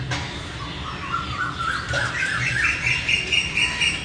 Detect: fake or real real